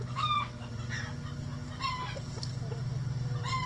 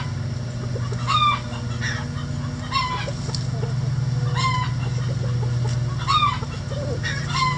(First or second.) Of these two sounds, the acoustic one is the second